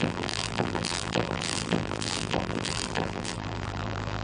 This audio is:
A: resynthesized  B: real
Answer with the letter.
A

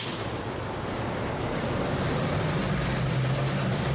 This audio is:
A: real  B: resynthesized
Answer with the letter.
A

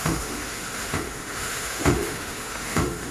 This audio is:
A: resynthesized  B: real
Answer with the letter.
A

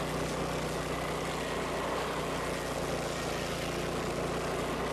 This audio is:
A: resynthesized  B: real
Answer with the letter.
B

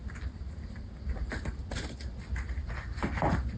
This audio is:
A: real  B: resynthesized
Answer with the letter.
A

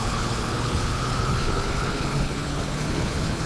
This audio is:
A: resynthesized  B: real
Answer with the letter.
A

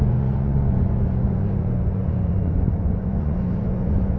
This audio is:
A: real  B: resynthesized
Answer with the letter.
B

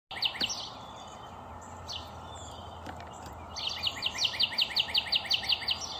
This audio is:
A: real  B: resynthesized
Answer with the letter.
A